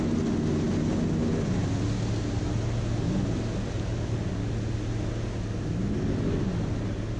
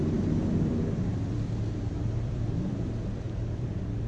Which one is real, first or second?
first